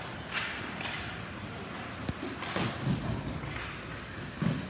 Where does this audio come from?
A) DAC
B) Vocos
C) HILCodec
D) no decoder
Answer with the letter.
D